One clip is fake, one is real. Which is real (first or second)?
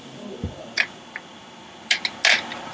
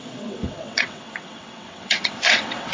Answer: first